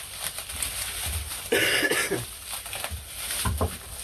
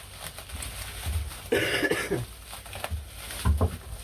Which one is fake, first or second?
first